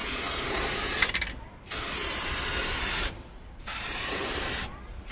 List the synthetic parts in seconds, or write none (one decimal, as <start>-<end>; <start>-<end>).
0.0-0.6; 2.0-5.1